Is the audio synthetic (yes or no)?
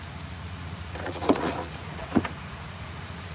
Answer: yes